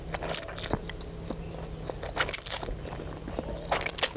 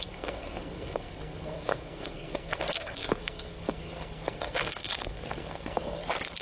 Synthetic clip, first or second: second